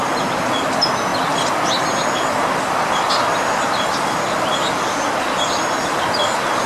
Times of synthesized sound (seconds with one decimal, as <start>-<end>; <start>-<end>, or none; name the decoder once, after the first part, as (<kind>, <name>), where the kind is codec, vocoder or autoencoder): none